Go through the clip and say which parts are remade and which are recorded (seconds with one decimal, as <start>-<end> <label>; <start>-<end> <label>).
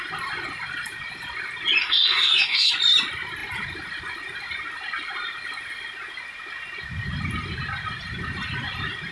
0.0-1.8 recorded; 1.8-2.7 remade; 2.7-9.1 recorded